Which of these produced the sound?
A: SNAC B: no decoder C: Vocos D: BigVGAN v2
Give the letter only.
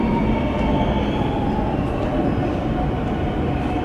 B